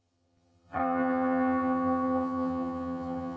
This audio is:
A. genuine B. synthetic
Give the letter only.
B